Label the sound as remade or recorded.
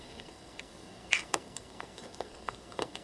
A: remade